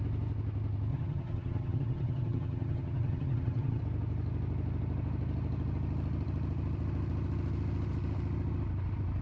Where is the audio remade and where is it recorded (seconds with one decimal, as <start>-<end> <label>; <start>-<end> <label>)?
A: 0.0-0.9 recorded; 0.9-3.8 remade; 3.8-9.2 recorded

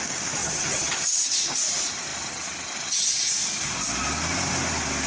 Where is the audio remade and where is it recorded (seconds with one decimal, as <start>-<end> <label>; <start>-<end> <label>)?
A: 0.0-0.4 recorded; 0.4-0.9 remade; 0.9-5.1 recorded

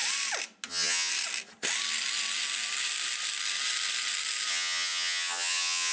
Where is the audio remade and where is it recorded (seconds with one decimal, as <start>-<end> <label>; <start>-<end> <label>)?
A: 0.0-0.7 recorded; 0.7-1.1 remade; 1.1-4.5 recorded; 4.5-5.9 remade

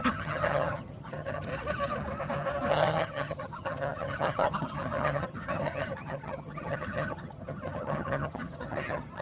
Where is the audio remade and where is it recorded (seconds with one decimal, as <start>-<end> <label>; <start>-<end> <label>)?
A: 0.0-1.5 remade; 1.5-2.7 recorded; 2.7-9.2 remade

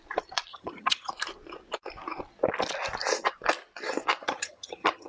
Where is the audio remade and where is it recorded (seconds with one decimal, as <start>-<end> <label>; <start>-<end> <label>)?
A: 0.0-0.5 recorded; 0.5-1.1 remade; 1.1-4.2 recorded; 4.2-5.1 remade

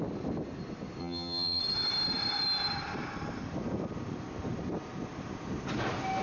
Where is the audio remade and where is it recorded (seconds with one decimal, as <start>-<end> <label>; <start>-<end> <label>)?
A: 0.0-1.0 recorded; 1.0-1.6 remade; 1.6-6.2 recorded

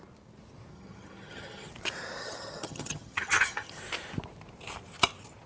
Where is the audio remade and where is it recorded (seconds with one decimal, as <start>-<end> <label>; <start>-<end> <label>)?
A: 0.0-0.7 recorded; 0.7-1.7 remade; 1.7-2.2 recorded; 2.2-3.8 remade; 3.8-5.5 recorded

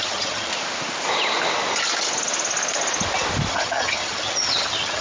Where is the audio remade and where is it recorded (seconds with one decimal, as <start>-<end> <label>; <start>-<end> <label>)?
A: 0.0-0.5 remade; 0.5-3.5 recorded; 3.5-5.0 remade